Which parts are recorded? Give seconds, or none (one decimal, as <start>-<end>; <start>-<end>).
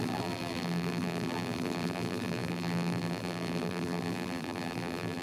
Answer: none